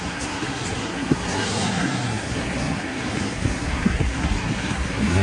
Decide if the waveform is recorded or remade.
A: remade